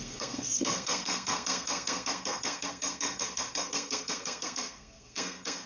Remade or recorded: remade